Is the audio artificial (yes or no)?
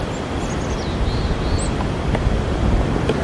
no